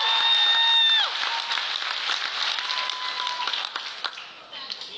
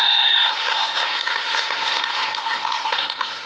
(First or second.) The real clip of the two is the first